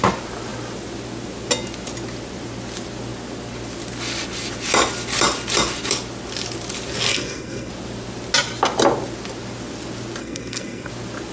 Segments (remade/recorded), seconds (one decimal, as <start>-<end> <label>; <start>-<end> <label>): 0.0-7.1 recorded; 7.1-7.7 remade; 7.7-10.2 recorded; 10.2-10.9 remade; 10.9-11.3 recorded